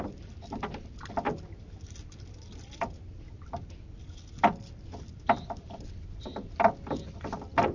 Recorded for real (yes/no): yes